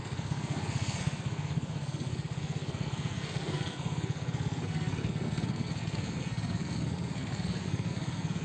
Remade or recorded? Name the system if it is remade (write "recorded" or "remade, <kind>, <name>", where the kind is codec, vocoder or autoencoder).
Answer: remade, codec, SNAC